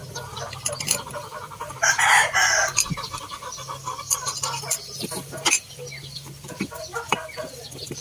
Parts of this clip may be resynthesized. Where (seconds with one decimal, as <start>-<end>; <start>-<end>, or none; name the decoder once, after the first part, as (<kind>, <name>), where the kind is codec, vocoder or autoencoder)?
0.0-8.0 (vocoder, BigVGAN v2)